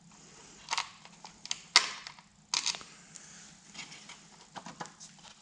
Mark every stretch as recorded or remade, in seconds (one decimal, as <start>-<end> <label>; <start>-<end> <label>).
0.0-5.4 recorded

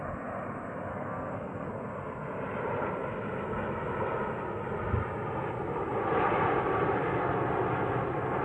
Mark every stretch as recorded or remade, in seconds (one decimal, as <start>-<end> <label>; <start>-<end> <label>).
0.0-0.9 recorded; 0.9-1.7 remade; 1.7-8.4 recorded